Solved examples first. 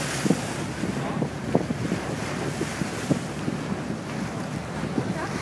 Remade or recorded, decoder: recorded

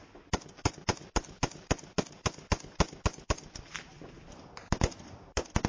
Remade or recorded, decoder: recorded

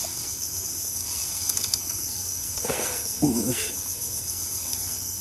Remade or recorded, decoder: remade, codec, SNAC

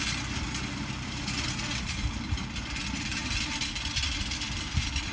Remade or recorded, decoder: recorded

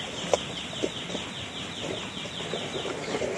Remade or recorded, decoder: recorded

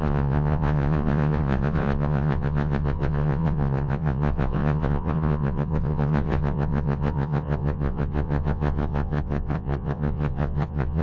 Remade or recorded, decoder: remade, vocoder, Vocos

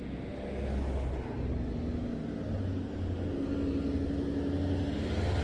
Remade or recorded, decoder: recorded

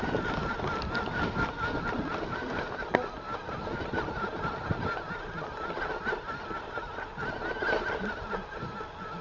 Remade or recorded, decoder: recorded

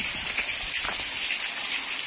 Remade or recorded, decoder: recorded